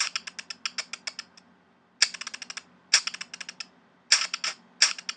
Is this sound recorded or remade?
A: recorded